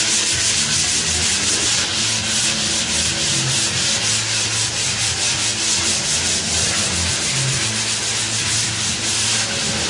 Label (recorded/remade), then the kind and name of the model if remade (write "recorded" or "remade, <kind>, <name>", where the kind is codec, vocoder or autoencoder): recorded